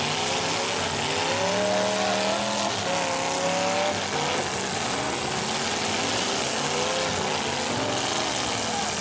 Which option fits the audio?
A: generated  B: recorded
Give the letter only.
B